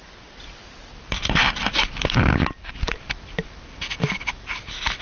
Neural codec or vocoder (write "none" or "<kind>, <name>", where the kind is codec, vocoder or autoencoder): none